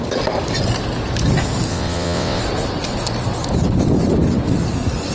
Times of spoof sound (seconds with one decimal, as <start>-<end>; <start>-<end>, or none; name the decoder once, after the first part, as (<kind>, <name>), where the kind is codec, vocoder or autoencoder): 1.7-2.4 (vocoder, WaveNeXt)